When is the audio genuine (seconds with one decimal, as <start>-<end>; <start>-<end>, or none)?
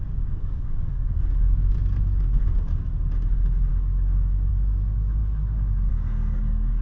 2.7-3.3